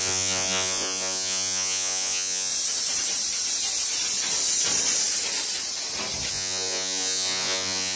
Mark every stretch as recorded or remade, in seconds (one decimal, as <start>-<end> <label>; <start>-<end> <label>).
0.0-2.5 remade; 2.5-6.3 recorded; 6.3-8.0 remade